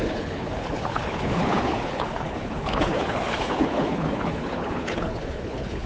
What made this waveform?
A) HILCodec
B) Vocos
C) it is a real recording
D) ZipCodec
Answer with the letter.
A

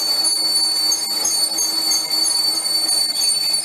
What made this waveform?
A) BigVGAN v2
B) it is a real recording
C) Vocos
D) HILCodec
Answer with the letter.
B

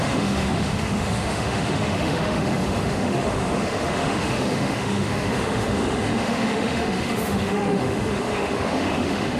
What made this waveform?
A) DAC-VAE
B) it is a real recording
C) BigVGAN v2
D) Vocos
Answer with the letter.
A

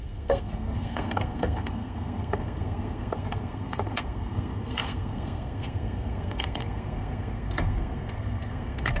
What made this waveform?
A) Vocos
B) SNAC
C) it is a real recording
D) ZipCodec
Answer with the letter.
B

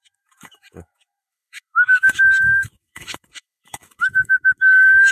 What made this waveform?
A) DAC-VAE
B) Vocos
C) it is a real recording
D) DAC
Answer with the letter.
A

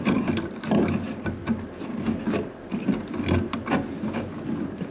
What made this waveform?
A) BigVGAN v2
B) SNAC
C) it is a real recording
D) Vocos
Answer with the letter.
C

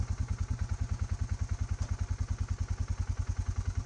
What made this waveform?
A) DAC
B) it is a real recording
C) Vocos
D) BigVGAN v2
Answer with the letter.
B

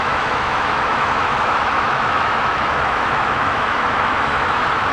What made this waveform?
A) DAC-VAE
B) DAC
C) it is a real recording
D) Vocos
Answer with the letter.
A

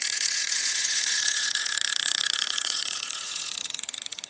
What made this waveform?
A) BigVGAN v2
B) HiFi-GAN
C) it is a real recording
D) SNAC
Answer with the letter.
B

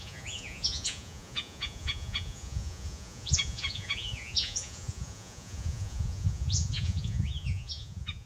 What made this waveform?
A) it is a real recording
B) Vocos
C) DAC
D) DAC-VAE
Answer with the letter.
B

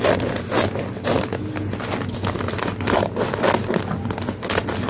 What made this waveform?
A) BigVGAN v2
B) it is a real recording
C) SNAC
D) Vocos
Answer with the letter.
B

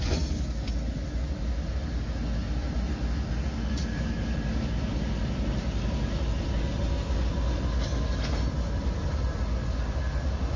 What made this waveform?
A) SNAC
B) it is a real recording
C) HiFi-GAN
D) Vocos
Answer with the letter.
B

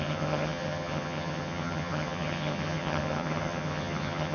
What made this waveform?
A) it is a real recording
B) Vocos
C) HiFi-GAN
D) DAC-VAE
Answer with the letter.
C